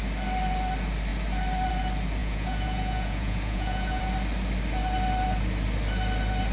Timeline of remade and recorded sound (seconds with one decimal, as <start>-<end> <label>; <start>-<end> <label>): 0.0-2.2 recorded; 2.2-4.0 remade; 4.0-6.5 recorded